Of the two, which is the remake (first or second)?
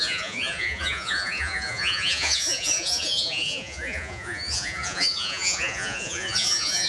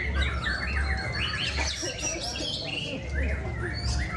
first